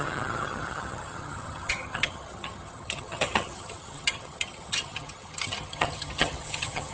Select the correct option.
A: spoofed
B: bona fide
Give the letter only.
A